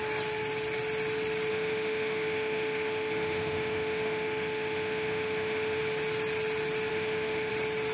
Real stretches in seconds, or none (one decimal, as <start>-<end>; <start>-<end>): 0.0-1.5; 5.8-6.9; 7.5-7.9